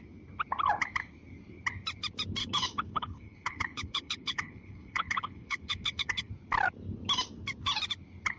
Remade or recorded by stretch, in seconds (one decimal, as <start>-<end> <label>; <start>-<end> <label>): 0.0-2.4 recorded; 2.4-6.3 remade; 6.3-8.4 recorded